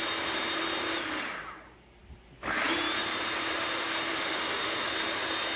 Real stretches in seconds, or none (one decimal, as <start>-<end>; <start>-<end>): 0.0-4.1; 4.8-5.6